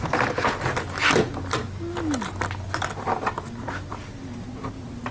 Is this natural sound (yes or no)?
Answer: yes